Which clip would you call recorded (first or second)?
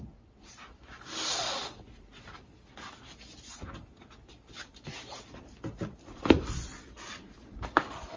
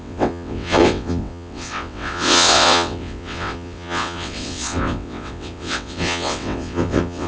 first